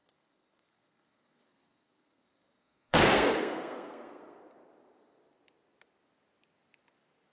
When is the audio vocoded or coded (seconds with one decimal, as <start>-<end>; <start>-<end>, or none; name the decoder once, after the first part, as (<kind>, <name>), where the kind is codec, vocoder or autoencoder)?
0.0-4.4 (codec, SNAC)